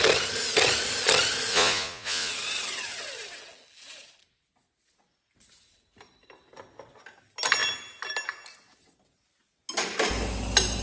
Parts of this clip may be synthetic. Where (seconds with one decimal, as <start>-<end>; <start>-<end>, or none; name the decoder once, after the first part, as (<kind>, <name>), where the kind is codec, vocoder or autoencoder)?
1.5-2.3 (vocoder, Vocos)